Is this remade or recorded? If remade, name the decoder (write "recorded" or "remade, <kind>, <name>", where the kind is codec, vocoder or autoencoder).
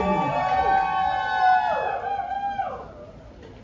recorded